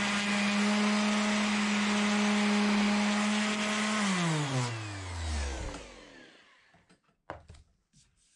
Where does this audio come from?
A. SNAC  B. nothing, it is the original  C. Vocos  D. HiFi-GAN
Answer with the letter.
B